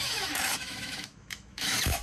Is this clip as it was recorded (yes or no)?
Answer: no